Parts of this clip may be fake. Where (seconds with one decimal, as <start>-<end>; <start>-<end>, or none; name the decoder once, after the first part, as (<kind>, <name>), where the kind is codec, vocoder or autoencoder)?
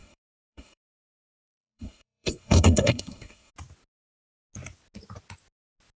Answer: 0.0-3.5 (codec, SNAC)